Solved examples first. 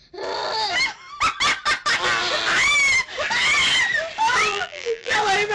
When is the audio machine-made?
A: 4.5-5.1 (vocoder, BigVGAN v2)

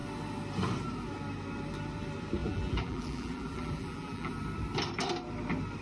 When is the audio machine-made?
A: 2.4-4.3 (vocoder, BigVGAN v2)